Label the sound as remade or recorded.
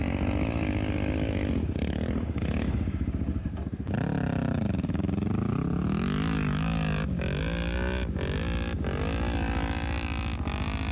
recorded